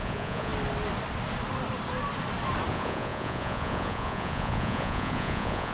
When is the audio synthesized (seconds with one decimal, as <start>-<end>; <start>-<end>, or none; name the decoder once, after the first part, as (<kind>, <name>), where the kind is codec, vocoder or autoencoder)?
0.0-0.5 (vocoder, Vocos); 2.7-5.7